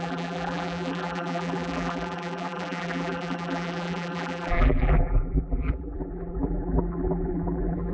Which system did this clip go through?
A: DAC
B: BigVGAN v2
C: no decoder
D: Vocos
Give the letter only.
B